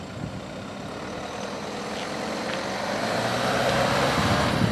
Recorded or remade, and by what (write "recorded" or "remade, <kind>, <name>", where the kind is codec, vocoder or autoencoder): recorded